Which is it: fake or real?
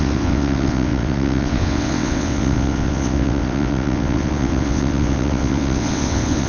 fake